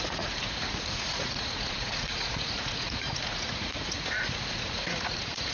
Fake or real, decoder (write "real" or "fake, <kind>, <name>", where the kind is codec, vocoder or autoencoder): fake, vocoder, Vocos